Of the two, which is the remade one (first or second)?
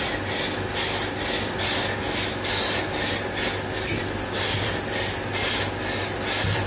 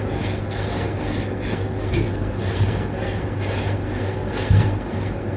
second